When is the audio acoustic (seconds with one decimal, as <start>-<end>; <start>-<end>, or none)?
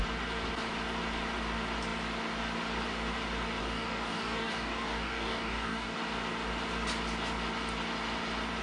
0.0-3.6; 6.0-8.6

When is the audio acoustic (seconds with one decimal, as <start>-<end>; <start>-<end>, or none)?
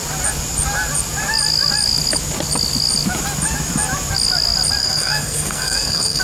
0.0-4.8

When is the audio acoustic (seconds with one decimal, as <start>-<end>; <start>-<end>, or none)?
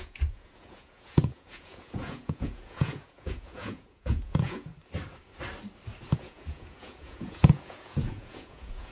4.7-6.1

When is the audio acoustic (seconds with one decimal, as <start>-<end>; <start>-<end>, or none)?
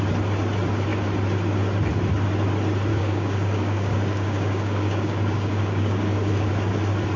0.0-2.9; 6.5-7.2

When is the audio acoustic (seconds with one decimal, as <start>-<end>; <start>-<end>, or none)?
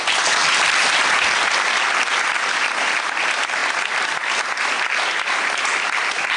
0.0-6.4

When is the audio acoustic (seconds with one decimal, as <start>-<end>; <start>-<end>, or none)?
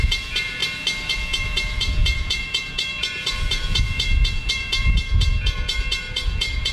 0.6-1.1